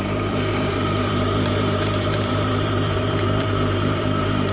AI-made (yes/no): yes